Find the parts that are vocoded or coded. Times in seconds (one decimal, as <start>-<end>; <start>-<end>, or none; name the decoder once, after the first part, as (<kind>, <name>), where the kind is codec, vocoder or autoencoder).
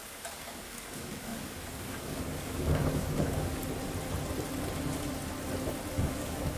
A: 0.0-3.6 (codec, DAC); 5.9-6.6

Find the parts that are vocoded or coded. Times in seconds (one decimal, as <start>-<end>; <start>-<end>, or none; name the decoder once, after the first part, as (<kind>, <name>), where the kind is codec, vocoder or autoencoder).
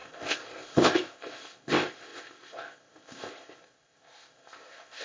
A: 0.0-5.0 (codec, ZipCodec)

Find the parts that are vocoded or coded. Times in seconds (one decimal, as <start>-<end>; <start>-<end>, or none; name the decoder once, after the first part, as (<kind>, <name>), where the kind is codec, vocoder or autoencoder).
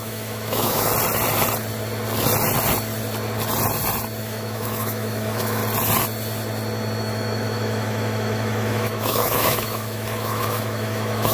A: 0.0-0.9 (autoencoder, DAC-VAE); 4.2-5.6; 7.0-11.3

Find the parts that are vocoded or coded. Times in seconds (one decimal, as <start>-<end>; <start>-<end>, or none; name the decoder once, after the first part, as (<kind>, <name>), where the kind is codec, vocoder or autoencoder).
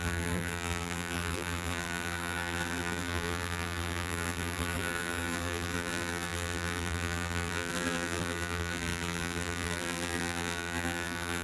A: 0.0-11.4 (vocoder, BigVGAN v2)